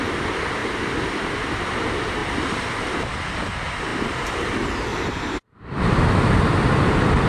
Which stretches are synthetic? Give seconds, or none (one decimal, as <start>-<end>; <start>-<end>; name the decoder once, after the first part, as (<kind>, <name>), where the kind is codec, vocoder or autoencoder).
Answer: 2.2-3.0 (vocoder, BigVGAN v2); 3.9-4.4; 4.9-6.5